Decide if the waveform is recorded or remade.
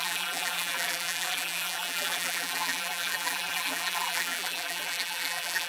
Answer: remade